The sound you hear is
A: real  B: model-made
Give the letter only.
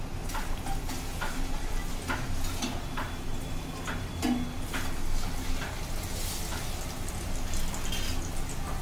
A